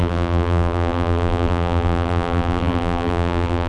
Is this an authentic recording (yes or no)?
no